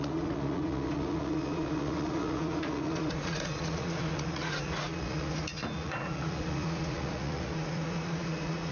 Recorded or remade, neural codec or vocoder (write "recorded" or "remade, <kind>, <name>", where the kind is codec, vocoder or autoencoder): remade, vocoder, Vocos